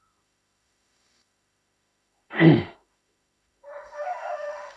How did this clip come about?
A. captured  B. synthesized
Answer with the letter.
B